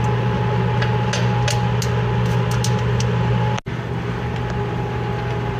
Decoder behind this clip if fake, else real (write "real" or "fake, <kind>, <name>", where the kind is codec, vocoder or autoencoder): real